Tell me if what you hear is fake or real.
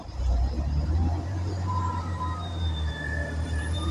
fake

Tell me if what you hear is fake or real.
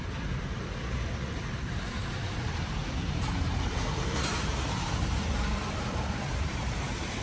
fake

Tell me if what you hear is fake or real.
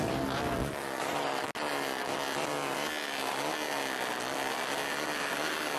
real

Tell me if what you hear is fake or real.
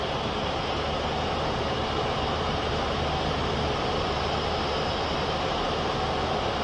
fake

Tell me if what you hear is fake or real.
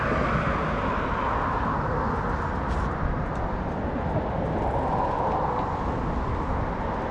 real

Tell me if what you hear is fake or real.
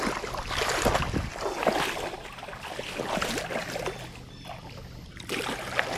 real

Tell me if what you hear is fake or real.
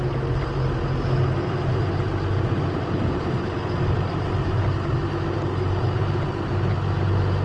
real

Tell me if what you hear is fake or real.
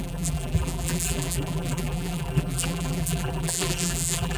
fake